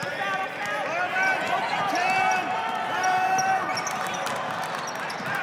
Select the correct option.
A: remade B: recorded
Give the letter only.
B